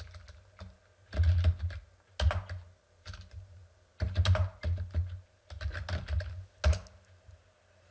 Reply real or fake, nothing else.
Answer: real